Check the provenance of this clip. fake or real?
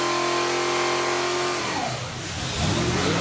real